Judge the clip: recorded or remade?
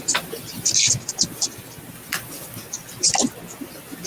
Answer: recorded